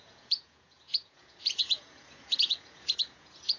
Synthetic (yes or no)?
yes